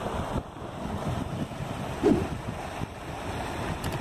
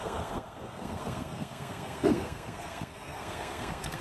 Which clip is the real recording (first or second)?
first